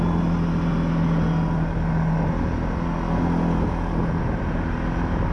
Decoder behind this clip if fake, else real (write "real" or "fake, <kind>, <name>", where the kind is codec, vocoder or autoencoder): real